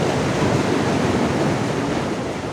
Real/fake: fake